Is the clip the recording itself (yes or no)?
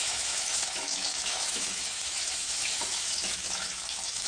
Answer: no